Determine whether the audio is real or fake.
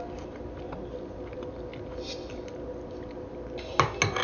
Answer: real